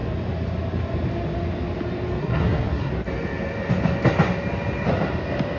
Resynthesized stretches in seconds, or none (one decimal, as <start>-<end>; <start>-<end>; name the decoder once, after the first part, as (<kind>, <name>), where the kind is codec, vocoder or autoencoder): 2.2-2.9 (codec, SNAC)